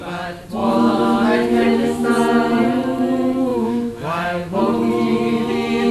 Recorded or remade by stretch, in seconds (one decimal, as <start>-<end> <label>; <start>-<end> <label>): 0.0-0.6 recorded; 0.6-2.1 remade; 2.1-3.5 recorded; 3.5-4.6 remade; 4.6-5.9 recorded